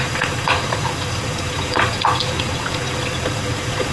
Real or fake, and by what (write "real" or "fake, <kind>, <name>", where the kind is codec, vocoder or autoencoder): fake, vocoder, Vocos